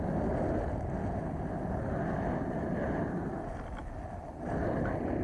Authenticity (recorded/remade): recorded